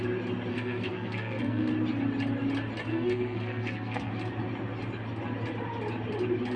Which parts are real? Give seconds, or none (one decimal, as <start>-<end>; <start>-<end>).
0.0-0.5; 1.7-2.9; 4.1-6.6